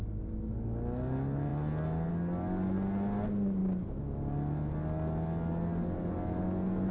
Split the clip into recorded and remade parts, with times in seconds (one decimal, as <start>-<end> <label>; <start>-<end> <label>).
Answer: 0.0-6.9 recorded